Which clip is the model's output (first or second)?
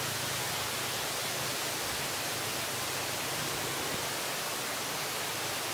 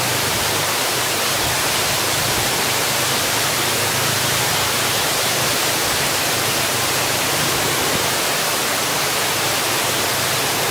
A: second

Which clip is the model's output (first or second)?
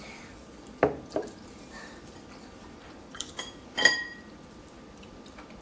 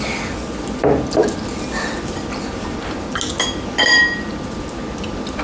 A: first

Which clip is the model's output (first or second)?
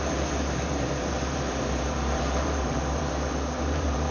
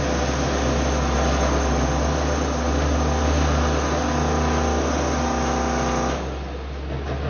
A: first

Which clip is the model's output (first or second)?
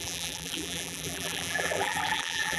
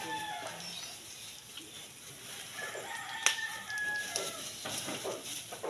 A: first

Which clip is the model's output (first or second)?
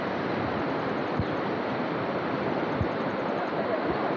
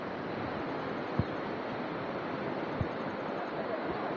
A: first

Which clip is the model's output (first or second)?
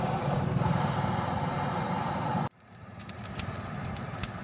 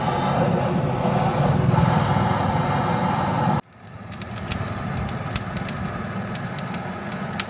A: first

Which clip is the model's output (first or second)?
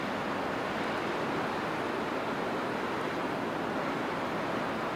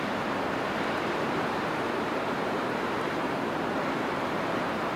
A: second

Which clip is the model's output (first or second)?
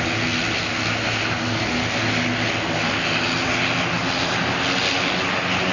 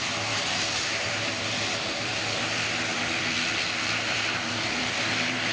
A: second